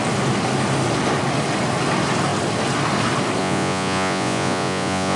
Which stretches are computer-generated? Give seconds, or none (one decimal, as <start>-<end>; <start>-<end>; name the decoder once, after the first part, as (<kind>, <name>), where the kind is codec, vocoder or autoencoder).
3.4-5.2 (vocoder, Vocos)

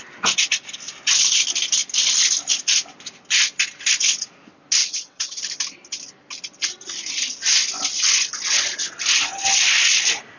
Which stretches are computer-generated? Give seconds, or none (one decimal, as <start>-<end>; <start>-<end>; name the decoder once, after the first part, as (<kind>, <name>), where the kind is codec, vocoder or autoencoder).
4.8-5.4 (vocoder, WaveNeXt)

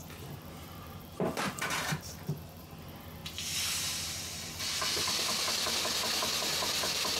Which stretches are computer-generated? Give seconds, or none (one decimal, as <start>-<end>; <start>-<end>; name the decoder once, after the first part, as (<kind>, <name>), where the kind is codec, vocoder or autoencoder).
0.0-2.7 (vocoder, BigVGAN v2)

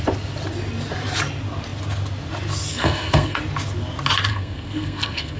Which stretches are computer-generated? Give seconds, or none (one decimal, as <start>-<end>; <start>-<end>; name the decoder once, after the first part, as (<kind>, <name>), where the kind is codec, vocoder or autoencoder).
2.7-3.4 (codec, SNAC); 4.3-5.4

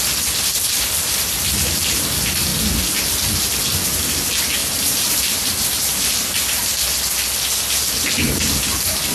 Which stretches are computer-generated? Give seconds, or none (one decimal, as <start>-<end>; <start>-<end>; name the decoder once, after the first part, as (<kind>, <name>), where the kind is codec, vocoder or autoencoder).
4.6-5.5 (vocoder, BigVGAN v2)

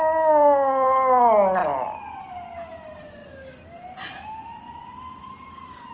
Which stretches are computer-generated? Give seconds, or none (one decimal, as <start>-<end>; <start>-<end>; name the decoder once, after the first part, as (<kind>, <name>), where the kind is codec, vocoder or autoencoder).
none

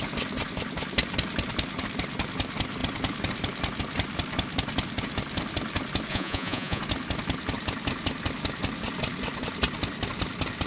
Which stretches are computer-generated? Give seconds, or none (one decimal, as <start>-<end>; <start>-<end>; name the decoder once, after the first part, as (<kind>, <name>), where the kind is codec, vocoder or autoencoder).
6.1-6.8 (vocoder, Vocos)